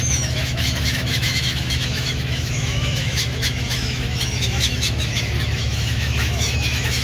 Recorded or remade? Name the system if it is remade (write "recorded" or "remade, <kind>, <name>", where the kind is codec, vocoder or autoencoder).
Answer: remade, autoencoder, DAC-VAE